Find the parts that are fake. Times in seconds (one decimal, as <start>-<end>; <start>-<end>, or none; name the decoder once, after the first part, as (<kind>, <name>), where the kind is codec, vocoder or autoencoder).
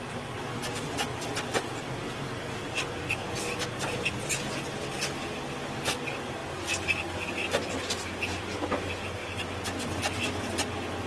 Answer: none